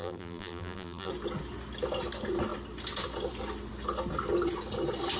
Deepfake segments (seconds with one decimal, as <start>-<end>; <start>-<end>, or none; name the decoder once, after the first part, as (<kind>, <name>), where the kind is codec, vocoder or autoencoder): 0.0-1.1 (vocoder, BigVGAN v2)